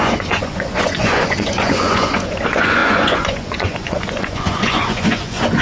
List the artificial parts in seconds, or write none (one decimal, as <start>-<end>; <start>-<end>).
0.0-5.6